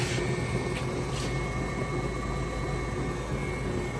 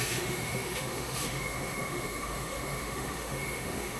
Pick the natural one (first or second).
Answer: first